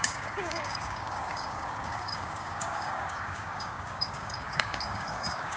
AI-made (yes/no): yes